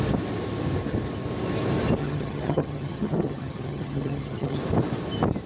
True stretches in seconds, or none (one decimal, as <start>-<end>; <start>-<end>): 0.0-2.0; 4.6-5.5